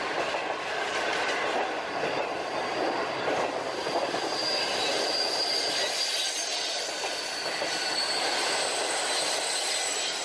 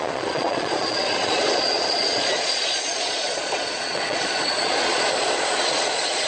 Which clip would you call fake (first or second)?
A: second